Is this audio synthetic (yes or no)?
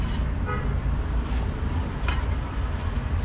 no